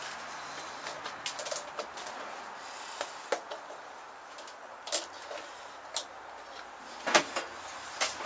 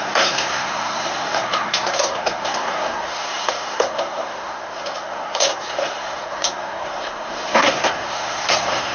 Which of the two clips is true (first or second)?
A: first